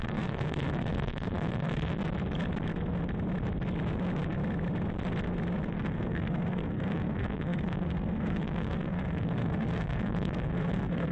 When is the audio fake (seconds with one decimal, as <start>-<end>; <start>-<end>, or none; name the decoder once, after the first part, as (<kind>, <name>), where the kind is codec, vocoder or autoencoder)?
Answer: 0.0-2.0 (codec, SNAC); 5.7-11.1